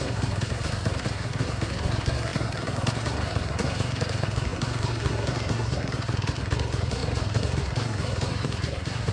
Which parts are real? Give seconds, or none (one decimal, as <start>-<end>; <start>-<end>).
none